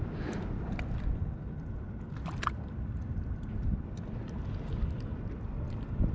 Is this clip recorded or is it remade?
recorded